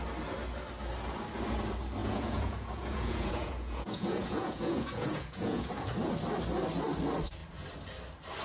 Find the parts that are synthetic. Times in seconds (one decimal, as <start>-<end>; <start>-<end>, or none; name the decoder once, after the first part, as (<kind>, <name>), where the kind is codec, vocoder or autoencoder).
2.0-5.7 (vocoder, Vocos)